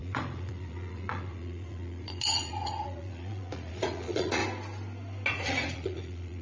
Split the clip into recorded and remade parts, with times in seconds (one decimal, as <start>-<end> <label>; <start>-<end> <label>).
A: 0.0-4.4 remade; 4.4-5.3 recorded; 5.3-6.4 remade